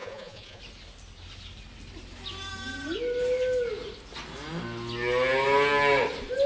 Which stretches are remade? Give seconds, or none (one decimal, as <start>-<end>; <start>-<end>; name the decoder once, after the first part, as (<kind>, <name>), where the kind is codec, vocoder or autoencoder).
0.0-0.6 (vocoder, Vocos)